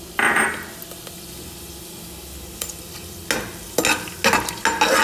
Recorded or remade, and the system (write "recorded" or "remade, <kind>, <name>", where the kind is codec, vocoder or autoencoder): recorded